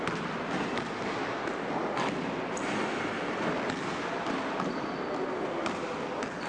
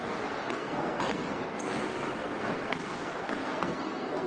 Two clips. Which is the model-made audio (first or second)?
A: second